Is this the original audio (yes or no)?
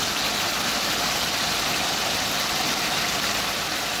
yes